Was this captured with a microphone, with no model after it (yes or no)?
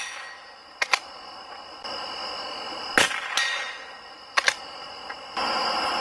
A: yes